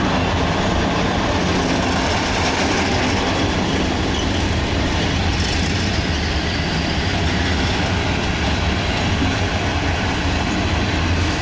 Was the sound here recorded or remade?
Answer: recorded